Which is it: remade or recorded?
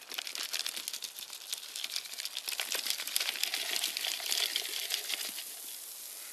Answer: recorded